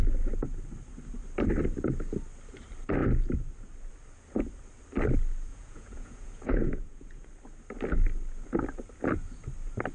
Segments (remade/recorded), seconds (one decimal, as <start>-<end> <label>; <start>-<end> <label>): 0.0-5.5 recorded; 5.5-7.3 remade; 7.3-9.9 recorded